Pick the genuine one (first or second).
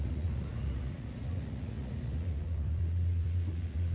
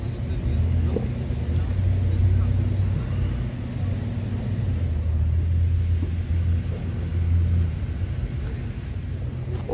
second